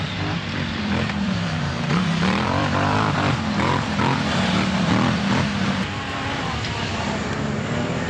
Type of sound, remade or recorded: remade